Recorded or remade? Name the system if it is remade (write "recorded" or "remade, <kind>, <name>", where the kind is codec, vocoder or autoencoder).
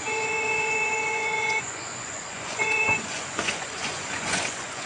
remade, vocoder, Vocos